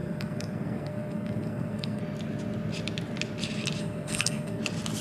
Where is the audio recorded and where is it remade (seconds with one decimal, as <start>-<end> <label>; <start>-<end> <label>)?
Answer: 0.0-2.0 remade; 2.0-3.8 recorded; 3.8-4.6 remade; 4.6-5.0 recorded